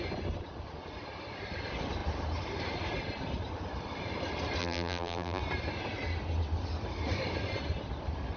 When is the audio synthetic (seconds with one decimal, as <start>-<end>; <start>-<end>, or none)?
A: 4.6-5.4